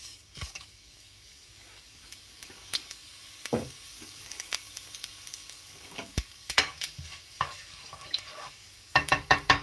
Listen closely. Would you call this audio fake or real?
fake